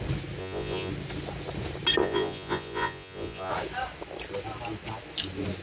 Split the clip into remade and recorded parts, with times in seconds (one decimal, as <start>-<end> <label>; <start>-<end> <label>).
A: 0.0-0.4 recorded; 0.4-0.9 remade; 0.9-2.0 recorded; 2.0-3.5 remade; 3.5-5.6 recorded